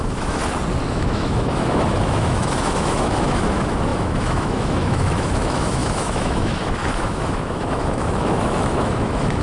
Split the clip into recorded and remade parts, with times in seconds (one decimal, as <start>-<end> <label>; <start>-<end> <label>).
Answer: 0.0-0.4 remade; 0.4-0.9 recorded; 0.9-9.4 remade